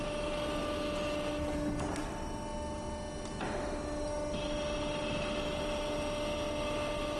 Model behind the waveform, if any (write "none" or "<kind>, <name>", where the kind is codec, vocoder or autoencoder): none